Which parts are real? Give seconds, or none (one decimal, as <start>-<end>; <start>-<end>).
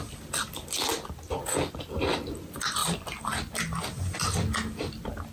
0.0-5.3